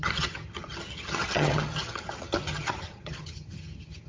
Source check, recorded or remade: remade